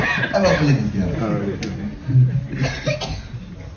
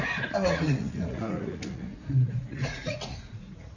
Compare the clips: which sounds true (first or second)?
first